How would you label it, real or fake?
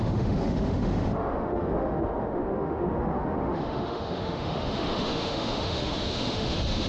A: fake